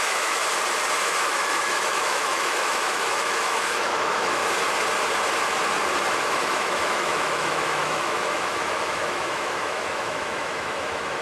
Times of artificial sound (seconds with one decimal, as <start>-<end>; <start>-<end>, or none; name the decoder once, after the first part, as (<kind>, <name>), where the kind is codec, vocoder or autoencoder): 0.0-0.4 (autoencoder, DAC-VAE); 1.0-4.4; 6.2-11.2